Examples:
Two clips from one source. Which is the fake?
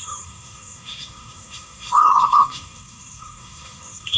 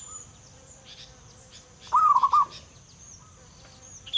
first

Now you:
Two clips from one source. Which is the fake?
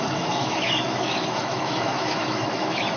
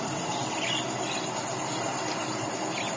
first